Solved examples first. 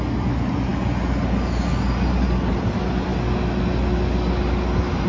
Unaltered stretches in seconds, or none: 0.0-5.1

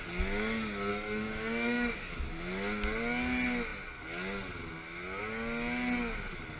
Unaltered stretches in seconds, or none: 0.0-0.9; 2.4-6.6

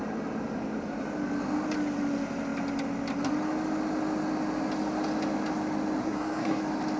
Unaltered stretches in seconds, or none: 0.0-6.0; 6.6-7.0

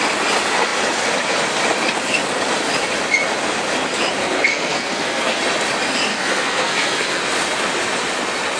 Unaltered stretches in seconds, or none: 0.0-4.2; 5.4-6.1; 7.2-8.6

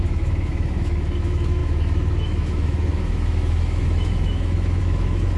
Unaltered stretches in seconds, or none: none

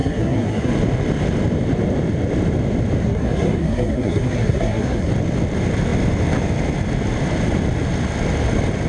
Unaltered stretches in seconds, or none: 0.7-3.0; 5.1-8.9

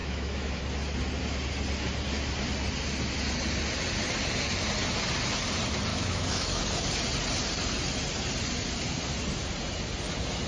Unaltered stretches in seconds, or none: 0.6-5.9; 6.6-10.5

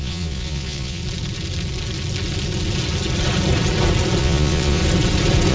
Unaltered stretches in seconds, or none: 1.0-4.2; 4.8-5.5